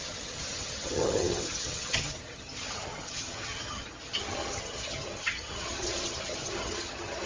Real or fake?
fake